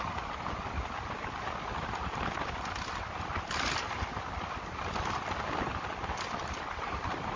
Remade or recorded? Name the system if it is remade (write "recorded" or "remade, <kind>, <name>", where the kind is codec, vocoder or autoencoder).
recorded